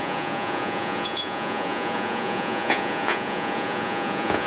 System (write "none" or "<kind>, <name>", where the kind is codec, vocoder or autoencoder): vocoder, Vocos